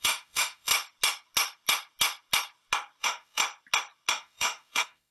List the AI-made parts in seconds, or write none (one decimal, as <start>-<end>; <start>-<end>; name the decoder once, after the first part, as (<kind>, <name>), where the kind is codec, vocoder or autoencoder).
0.0-0.7 (autoencoder, DAC-VAE); 3.0-3.4; 4.1-5.1